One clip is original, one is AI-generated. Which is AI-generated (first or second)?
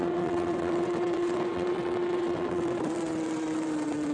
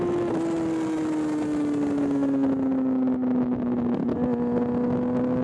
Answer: first